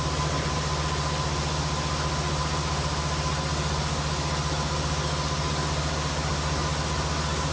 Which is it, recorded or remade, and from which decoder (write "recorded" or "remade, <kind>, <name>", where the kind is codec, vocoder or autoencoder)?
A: recorded